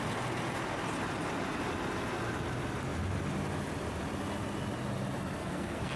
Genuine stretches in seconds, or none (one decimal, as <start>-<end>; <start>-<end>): 0.0-5.4